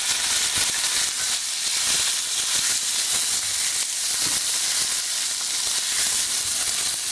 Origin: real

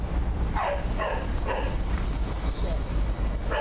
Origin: real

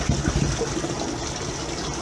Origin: real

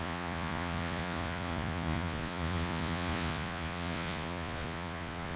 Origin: fake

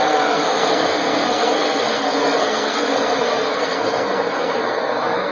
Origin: fake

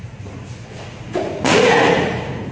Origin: fake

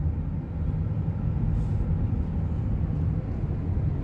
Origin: real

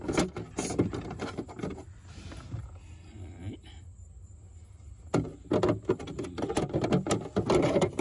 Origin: real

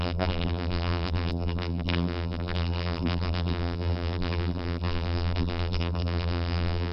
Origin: fake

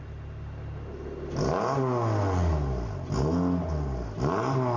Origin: real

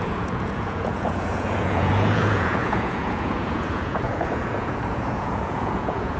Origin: fake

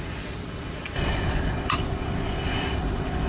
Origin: fake